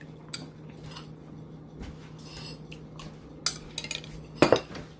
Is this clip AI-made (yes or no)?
no